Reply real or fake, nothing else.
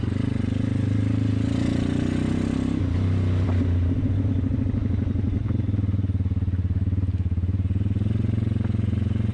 real